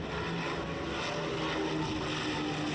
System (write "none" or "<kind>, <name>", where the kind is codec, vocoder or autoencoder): none